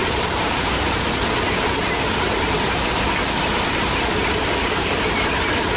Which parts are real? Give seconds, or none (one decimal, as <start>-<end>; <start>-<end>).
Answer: 0.5-5.8